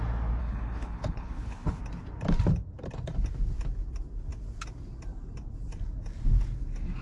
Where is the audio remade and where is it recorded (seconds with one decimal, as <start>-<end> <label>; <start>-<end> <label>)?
0.0-0.4 recorded; 0.4-1.8 remade; 1.8-7.0 recorded